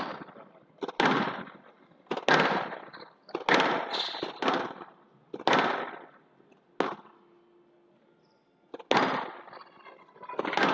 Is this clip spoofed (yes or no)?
no